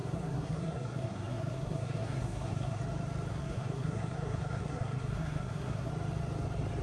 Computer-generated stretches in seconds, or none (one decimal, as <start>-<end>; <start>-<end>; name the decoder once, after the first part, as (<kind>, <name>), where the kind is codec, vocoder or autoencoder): 0.0-2.8 (codec, SNAC); 3.3-5.9